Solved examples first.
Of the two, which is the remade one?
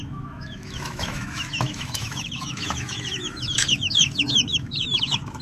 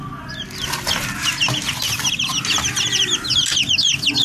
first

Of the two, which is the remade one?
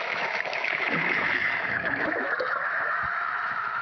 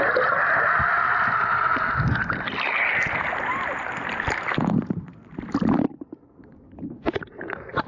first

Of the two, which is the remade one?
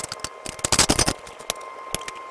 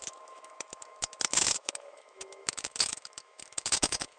second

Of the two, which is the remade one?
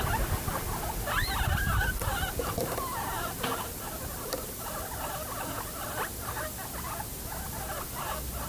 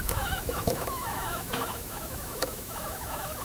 second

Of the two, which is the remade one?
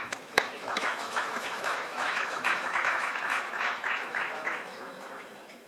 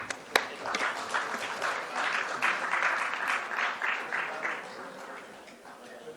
first